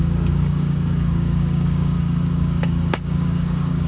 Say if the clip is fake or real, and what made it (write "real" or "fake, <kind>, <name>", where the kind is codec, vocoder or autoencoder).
fake, codec, DAC